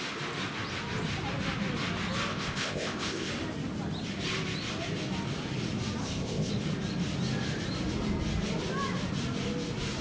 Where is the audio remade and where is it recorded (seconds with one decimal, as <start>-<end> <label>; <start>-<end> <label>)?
0.0-2.3 recorded; 2.3-3.3 remade; 3.3-6.0 recorded; 6.0-6.5 remade; 6.5-10.0 recorded